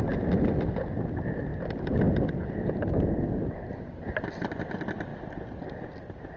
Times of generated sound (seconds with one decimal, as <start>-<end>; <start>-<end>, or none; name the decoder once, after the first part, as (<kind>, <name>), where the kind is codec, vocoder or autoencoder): none